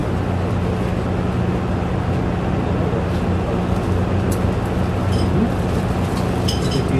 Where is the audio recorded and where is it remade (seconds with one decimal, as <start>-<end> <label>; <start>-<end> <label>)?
0.0-7.0 recorded